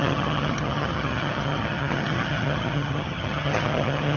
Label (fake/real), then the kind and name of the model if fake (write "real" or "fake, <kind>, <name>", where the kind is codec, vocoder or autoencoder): fake, vocoder, HiFi-GAN